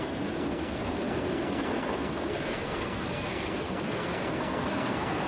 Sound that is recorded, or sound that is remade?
remade